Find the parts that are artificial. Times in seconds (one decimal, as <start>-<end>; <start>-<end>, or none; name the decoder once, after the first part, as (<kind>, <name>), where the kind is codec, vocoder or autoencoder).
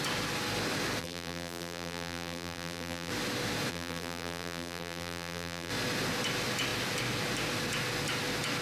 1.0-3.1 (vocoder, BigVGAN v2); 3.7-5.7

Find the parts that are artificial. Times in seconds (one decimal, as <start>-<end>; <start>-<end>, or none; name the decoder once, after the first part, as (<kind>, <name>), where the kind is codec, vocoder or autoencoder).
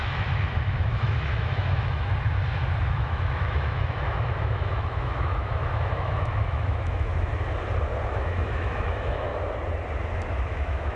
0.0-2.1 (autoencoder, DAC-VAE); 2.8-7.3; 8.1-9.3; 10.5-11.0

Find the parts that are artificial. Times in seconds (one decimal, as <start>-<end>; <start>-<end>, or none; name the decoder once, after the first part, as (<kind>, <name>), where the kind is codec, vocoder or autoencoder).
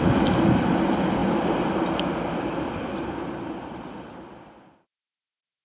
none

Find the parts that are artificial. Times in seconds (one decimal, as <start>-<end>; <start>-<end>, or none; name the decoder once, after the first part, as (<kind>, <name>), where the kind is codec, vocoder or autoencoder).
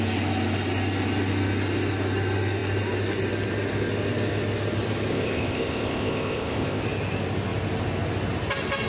5.1-6.8 (codec, ZipCodec)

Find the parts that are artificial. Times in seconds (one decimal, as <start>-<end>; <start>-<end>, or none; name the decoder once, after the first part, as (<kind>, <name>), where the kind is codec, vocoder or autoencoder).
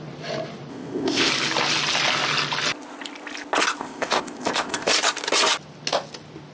0.7-1.3 (codec, ZipCodec); 3.8-4.9